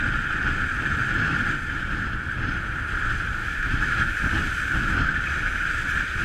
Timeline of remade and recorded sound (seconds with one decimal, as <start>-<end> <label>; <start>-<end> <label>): 0.0-3.4 recorded; 3.4-4.1 remade; 4.1-6.2 recorded